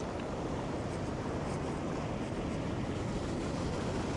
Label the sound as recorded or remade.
recorded